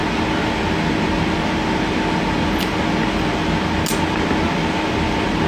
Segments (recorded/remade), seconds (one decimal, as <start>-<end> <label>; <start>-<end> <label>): 0.0-5.5 recorded